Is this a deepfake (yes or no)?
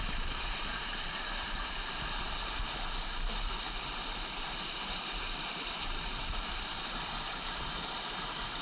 yes